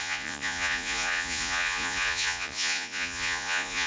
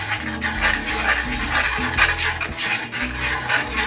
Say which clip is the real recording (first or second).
second